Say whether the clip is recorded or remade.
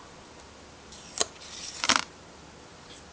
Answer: recorded